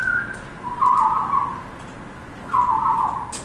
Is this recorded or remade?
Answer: recorded